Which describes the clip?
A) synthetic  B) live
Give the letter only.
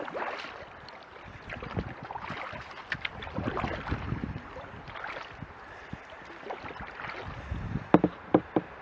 B